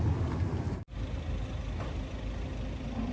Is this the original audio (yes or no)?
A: yes